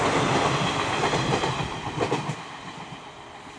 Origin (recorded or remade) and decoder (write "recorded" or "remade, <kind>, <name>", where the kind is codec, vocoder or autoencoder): recorded